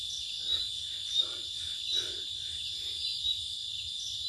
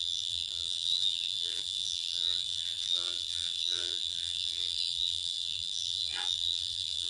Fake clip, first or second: second